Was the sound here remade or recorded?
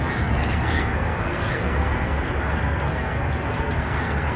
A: remade